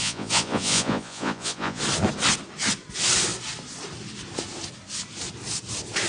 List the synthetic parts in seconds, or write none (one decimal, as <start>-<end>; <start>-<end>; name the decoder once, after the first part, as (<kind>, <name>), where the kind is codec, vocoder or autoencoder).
0.0-1.8 (vocoder, Vocos)